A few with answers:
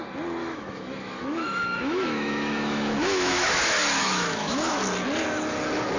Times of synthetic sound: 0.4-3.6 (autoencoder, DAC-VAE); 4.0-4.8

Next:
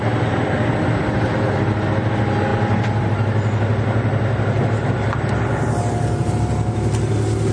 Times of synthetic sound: none

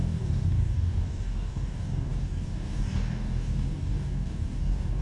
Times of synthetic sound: 0.0-5.0 (codec, DAC)

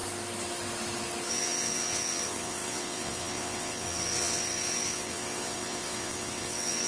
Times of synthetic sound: 1.3-6.9 (vocoder, WaveNeXt)

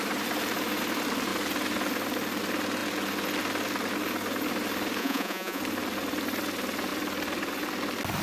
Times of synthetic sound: 5.0-5.6 (vocoder, Vocos)

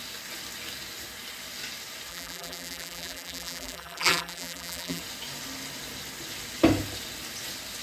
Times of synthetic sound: 2.1-5.0 (vocoder, BigVGAN v2)

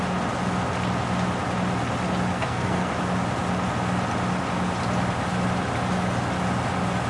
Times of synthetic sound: 2.3-2.9 (codec, SNAC)